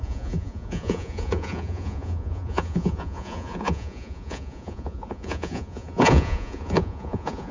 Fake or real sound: fake